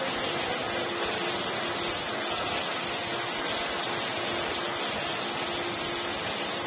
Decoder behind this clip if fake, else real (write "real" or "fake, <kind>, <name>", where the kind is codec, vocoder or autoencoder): real